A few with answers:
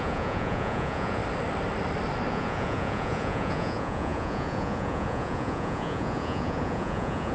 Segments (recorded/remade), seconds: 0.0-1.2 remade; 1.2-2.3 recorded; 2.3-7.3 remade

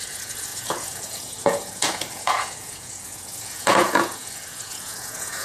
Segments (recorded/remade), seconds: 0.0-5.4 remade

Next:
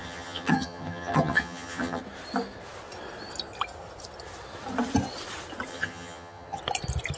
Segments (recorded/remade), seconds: 0.0-2.0 remade; 2.0-5.7 recorded; 5.7-6.6 remade; 6.6-7.2 recorded

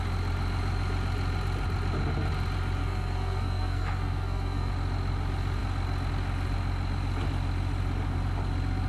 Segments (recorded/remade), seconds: 0.0-2.8 recorded; 2.8-4.7 remade; 4.7-8.9 recorded